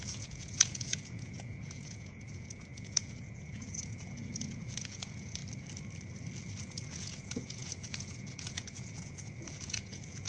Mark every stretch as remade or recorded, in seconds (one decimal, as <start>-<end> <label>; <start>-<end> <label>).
0.0-5.4 remade; 5.4-6.6 recorded; 6.6-10.3 remade